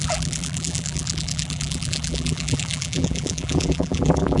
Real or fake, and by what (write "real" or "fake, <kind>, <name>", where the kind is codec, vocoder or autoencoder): fake, vocoder, BigVGAN v2